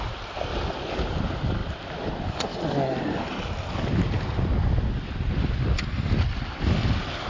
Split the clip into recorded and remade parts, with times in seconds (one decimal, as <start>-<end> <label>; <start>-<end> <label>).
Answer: 0.0-7.3 recorded